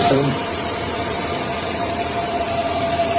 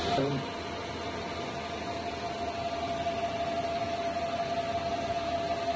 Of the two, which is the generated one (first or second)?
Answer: first